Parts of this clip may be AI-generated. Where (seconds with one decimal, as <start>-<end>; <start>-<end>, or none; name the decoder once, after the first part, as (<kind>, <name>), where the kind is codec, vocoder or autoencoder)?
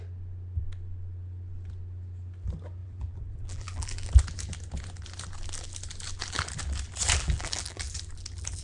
2.8-4.1 (vocoder, BigVGAN v2); 7.2-7.8